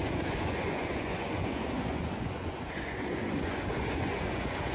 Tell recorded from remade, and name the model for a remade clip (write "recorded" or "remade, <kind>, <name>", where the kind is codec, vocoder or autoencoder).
remade, vocoder, Vocos